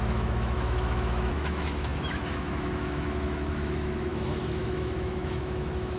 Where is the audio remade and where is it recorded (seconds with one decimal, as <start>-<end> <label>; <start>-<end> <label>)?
0.0-6.0 remade